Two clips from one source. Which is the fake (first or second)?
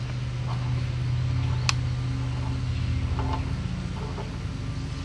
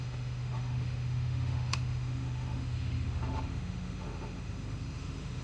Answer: second